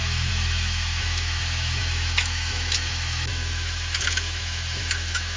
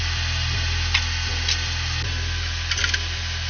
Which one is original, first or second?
second